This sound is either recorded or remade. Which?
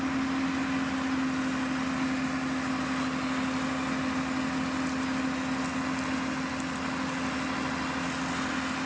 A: recorded